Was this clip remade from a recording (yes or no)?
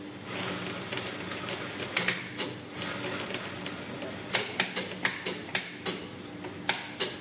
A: no